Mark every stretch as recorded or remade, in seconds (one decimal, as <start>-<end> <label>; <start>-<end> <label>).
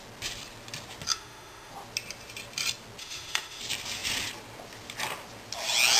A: 0.0-1.1 recorded; 1.1-1.7 remade; 1.7-3.0 recorded; 3.0-3.6 remade; 3.6-6.0 recorded